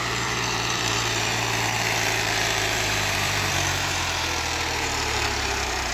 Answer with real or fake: fake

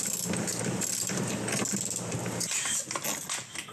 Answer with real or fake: real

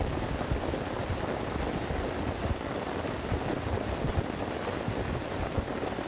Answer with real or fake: real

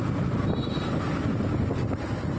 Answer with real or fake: real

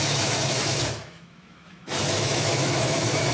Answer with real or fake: fake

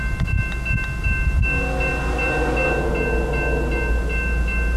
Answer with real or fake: real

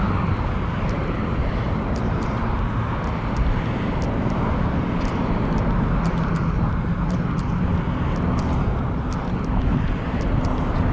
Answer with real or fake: real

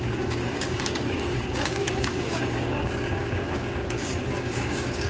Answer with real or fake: fake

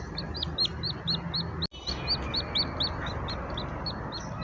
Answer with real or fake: real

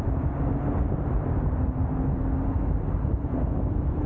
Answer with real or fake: real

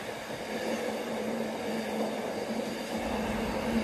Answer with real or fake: real